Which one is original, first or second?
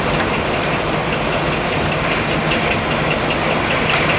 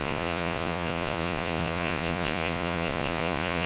first